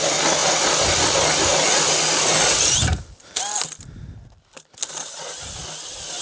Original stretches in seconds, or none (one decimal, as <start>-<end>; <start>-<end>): 0.0-6.2